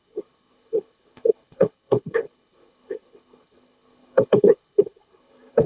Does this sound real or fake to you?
fake